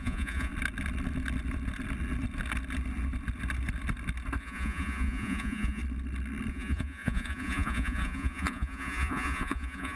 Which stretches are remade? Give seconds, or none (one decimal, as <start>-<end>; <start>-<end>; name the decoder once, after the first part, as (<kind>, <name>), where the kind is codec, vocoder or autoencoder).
0.0-0.5 (vocoder, Vocos); 4.4-5.8; 6.5-9.9